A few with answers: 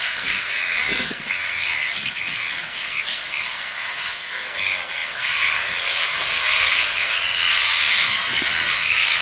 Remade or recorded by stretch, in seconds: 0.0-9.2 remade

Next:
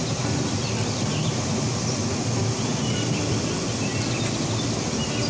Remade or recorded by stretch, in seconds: 0.0-2.7 recorded; 2.7-3.4 remade; 3.4-5.3 recorded

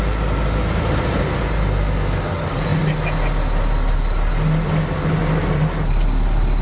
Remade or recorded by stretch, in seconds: 0.0-6.6 recorded

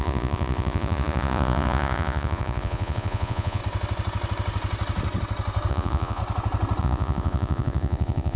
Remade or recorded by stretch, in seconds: 0.0-3.6 remade; 3.6-5.7 recorded; 5.7-6.2 remade; 6.2-6.8 recorded; 6.8-8.4 remade

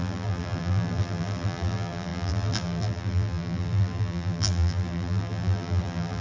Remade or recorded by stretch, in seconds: 0.0-6.2 remade

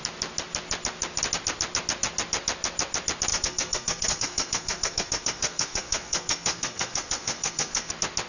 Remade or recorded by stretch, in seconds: 0.0-3.3 recorded; 3.3-7.9 remade; 7.9-8.3 recorded